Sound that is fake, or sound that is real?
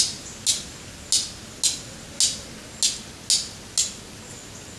real